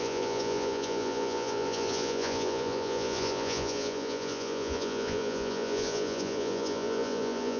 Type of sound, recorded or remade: remade